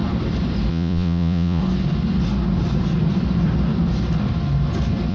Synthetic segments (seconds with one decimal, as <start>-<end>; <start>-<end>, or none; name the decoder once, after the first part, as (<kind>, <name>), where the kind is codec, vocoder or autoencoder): 0.7-1.6 (vocoder, Vocos)